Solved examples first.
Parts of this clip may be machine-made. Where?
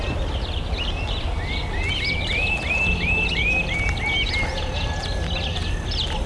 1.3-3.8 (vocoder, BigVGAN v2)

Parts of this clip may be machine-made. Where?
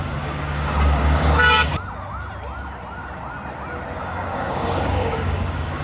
0.0-1.7 (codec, DAC); 4.0-5.8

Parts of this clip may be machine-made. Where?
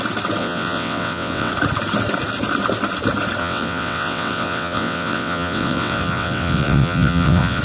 0.4-1.5 (vocoder, WaveNeXt); 3.4-7.6